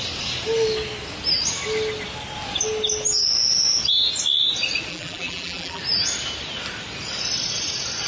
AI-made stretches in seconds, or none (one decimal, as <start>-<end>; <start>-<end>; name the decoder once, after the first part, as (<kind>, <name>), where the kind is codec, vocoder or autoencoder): 4.9-5.8 (vocoder, BigVGAN v2)